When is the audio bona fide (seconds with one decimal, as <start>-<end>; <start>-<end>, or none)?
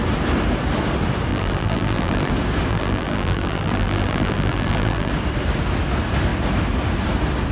0.0-1.3; 2.3-2.7; 5.1-7.5